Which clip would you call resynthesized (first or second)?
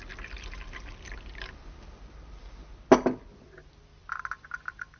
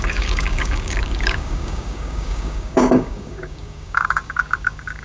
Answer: second